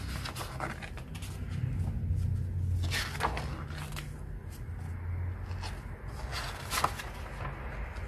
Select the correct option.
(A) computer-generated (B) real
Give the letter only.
B